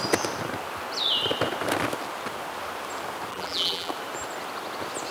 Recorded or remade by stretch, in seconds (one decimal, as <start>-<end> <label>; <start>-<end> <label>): 0.0-3.3 recorded; 3.3-3.9 remade; 3.9-5.1 recorded